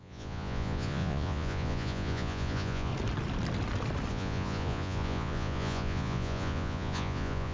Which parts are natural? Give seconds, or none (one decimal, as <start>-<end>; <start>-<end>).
2.9-4.1